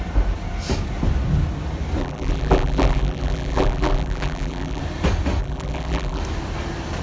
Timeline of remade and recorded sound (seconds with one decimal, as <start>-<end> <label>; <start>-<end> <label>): 0.0-2.0 recorded; 2.0-4.8 remade; 4.8-5.4 recorded; 5.4-6.2 remade; 6.2-7.0 recorded